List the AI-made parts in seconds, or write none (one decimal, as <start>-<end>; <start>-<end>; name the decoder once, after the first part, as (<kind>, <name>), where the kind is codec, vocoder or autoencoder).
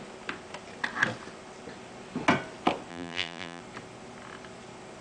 2.9-3.6 (vocoder, BigVGAN v2)